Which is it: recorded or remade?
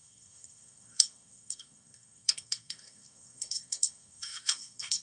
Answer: remade